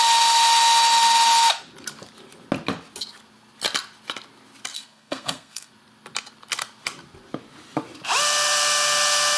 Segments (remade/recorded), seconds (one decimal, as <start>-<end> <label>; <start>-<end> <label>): 0.0-4.7 recorded; 4.7-5.7 remade; 5.7-9.4 recorded